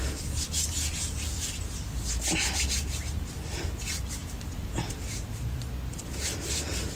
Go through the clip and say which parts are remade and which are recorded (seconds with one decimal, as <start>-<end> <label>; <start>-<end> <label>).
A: 0.0-4.2 recorded; 4.2-5.6 remade; 5.6-7.0 recorded